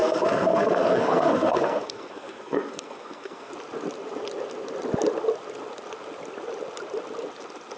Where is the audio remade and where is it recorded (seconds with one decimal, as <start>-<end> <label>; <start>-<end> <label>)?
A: 0.0-3.5 remade; 3.5-7.8 recorded